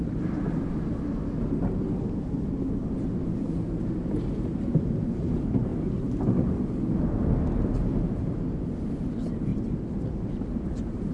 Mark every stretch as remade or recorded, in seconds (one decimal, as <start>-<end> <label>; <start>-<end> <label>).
0.0-11.1 recorded